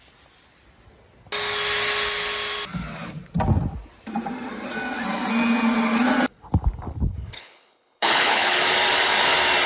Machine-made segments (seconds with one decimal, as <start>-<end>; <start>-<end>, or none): 7.2-8.6